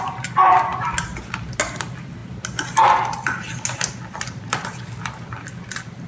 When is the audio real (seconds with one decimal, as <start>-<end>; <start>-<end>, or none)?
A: 0.0-6.1